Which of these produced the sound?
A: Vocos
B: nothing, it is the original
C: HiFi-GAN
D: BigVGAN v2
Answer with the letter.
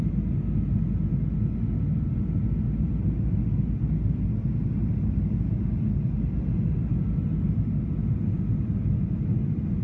B